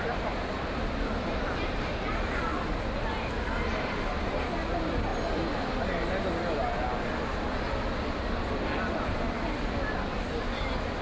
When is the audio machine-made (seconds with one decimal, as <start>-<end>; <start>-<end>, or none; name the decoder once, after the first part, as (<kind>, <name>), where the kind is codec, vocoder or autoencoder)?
none